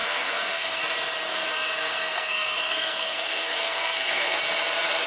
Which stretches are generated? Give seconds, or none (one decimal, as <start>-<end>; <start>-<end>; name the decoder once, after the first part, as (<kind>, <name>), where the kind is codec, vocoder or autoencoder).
0.0-0.8 (codec, SNAC); 1.3-4.4